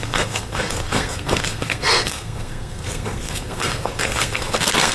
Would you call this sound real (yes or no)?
no